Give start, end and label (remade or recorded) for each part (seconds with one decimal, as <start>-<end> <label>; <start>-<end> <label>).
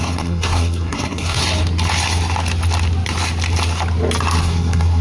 0.0-1.4 remade; 1.4-4.4 recorded; 4.4-5.0 remade